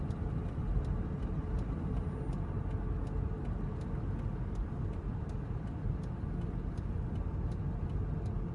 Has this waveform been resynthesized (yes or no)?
no